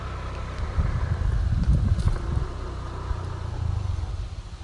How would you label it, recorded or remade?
recorded